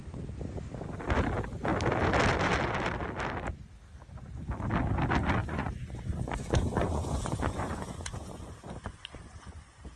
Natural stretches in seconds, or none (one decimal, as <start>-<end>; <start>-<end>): 0.0-5.4